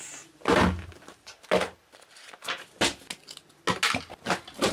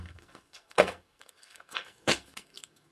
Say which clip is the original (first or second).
first